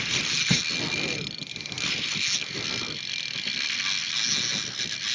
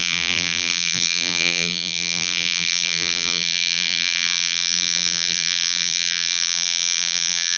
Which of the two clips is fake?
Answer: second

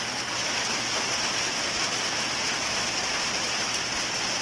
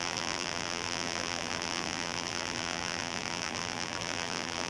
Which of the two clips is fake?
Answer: second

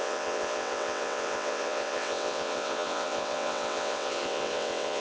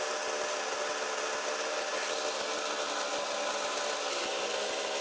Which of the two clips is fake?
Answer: first